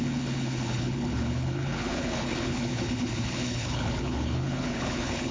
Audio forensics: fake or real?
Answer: fake